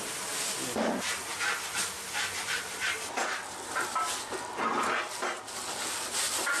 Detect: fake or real real